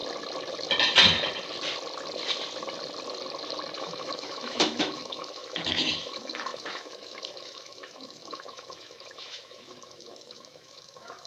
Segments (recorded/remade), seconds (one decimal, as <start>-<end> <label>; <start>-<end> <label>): 0.0-3.8 recorded; 3.8-11.3 remade